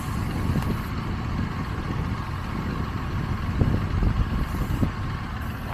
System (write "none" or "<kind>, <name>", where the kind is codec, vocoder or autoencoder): none